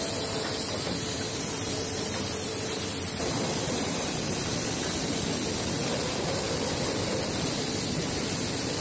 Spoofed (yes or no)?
no